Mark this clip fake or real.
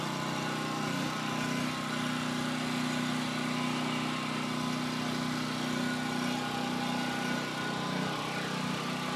real